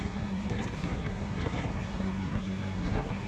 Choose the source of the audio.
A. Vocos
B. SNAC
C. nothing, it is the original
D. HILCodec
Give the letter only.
B